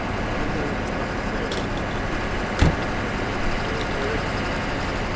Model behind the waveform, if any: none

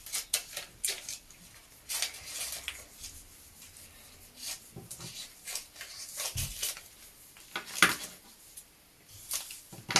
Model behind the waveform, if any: none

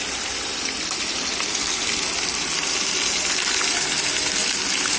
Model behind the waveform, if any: none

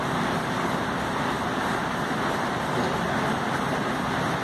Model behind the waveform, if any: vocoder, BigVGAN v2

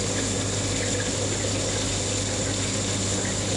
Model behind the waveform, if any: none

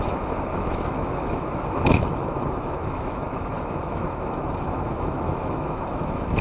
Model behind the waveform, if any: autoencoder, DAC-VAE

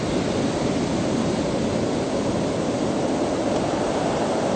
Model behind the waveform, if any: none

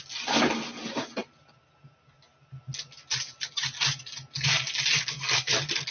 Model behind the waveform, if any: none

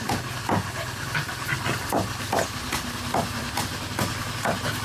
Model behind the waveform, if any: none